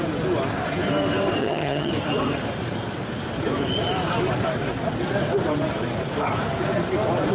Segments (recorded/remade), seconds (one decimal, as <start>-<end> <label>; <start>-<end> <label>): 0.0-1.4 recorded; 1.4-1.9 remade; 1.9-7.3 recorded